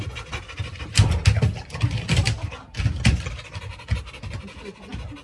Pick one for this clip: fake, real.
real